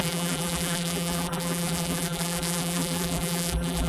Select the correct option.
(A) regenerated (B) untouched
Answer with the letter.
A